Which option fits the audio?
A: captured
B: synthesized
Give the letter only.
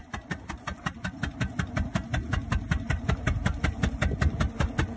A